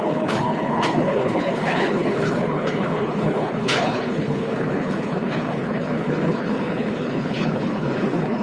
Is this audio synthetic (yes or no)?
yes